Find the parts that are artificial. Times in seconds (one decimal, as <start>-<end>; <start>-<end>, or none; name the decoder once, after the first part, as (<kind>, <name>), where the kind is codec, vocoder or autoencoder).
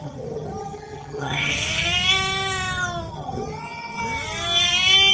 0.0-1.5 (vocoder, HiFi-GAN); 3.1-4.0